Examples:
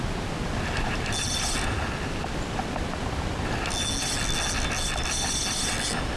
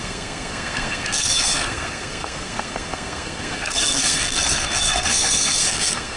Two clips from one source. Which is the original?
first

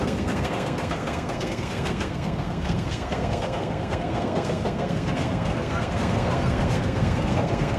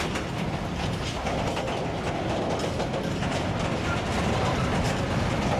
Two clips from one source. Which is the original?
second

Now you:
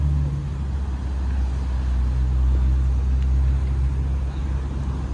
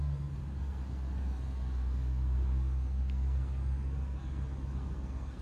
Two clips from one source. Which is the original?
first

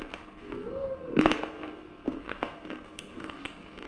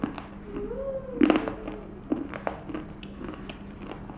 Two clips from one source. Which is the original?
second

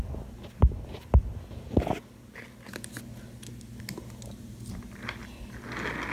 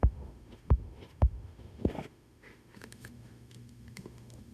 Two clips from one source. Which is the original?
first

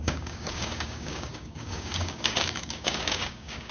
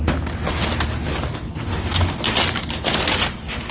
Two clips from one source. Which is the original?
second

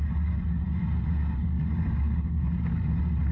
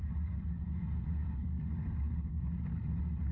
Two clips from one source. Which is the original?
first